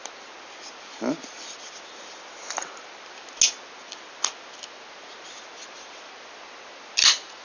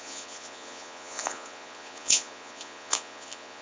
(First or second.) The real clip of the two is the first